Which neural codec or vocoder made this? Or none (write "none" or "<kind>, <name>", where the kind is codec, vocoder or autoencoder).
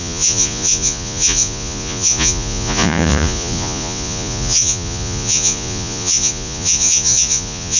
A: vocoder, Vocos